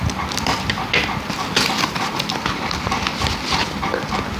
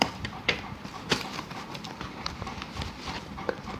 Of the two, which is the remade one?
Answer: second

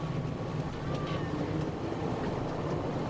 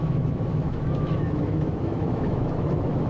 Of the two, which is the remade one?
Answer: second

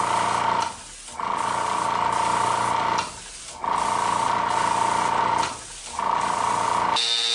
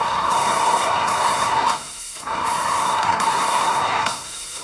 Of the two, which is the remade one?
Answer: second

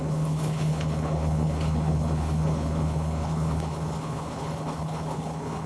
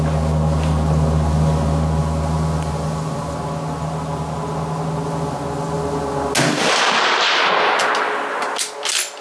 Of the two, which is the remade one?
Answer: first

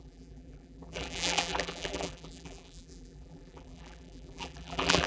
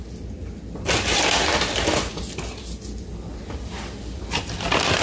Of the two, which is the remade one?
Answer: first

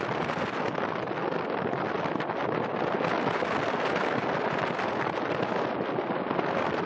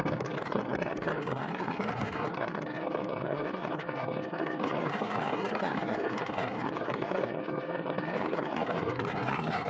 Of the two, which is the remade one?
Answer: second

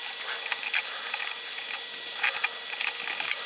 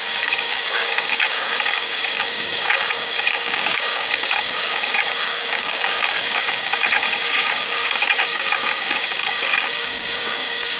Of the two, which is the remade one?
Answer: second